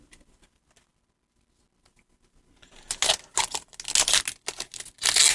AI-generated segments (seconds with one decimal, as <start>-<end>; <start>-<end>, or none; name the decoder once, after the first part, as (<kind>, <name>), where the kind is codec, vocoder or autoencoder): none